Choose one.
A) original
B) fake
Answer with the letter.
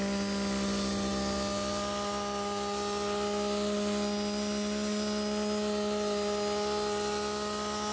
A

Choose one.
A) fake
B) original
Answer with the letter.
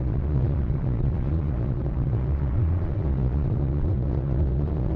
A